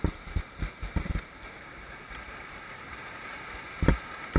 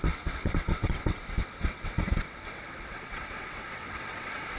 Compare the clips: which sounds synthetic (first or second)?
second